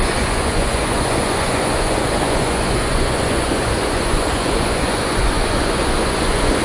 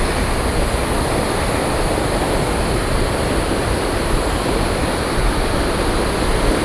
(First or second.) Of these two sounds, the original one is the second